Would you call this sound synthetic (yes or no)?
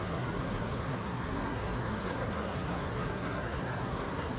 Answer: yes